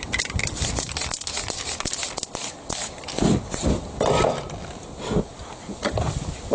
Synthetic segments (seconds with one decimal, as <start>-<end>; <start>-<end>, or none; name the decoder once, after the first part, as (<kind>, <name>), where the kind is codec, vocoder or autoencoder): none